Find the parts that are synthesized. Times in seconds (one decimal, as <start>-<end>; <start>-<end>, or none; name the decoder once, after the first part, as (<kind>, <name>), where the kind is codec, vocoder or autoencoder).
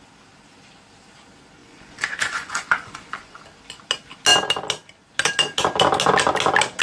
1.6-3.4 (vocoder, Vocos)